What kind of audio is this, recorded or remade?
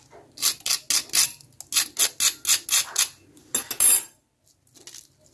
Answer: recorded